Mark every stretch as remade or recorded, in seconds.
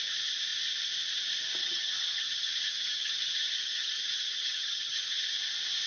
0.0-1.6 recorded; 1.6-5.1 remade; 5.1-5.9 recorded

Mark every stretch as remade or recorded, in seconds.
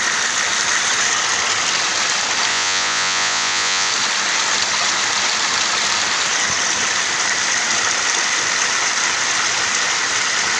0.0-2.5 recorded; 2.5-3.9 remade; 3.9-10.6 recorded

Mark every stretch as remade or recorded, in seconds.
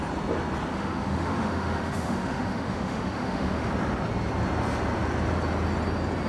0.0-0.7 recorded; 0.7-3.7 remade; 3.7-6.3 recorded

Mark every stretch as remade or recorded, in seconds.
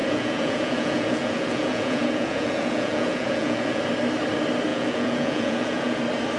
0.0-3.8 remade; 3.8-4.7 recorded; 4.7-6.0 remade; 6.0-6.4 recorded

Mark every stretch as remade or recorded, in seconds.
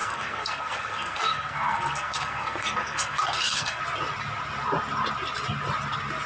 0.0-3.8 remade; 3.8-6.3 recorded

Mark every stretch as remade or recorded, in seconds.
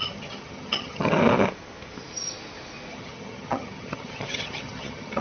0.0-1.2 remade; 1.2-2.9 recorded; 2.9-5.2 remade